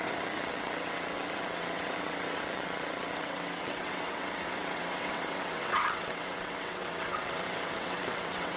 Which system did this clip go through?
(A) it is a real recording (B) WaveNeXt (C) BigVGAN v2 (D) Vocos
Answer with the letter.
B